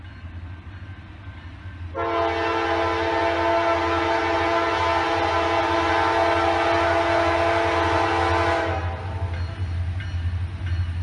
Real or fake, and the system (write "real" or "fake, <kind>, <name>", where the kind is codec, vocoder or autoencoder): real